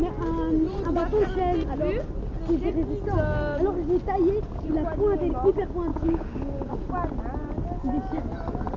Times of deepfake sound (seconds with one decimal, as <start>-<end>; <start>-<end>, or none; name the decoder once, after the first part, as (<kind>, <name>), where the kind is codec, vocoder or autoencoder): 5.9-6.7 (codec, DAC)